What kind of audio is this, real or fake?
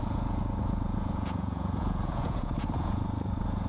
fake